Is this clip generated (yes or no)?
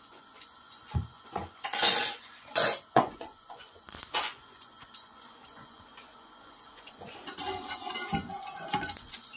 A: yes